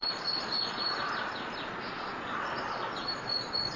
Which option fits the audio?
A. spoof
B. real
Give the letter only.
A